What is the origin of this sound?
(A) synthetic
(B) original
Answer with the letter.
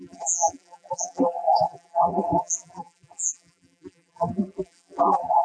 A